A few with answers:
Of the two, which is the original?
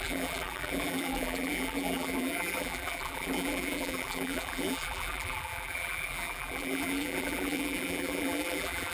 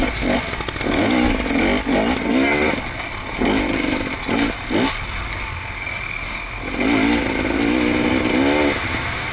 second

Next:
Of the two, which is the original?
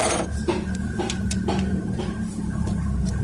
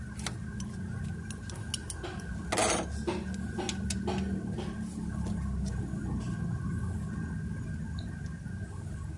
second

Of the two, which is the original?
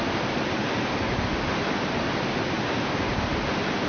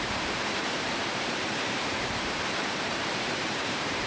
first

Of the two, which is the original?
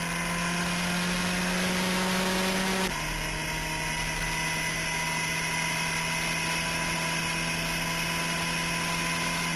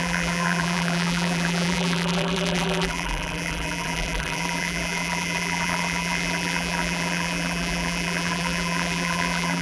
first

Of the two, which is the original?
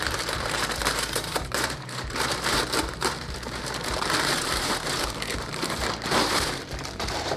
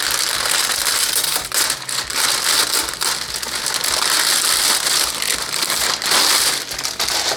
second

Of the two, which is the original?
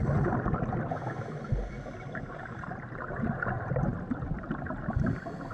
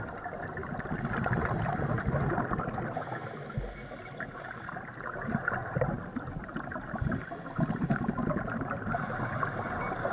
second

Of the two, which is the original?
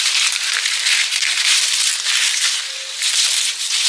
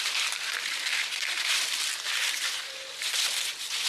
first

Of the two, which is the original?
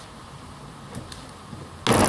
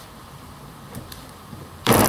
first